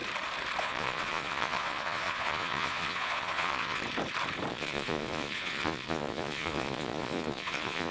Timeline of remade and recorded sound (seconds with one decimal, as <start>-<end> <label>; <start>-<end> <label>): 0.0-0.6 recorded; 0.6-3.8 remade; 3.8-4.5 recorded; 4.5-7.9 remade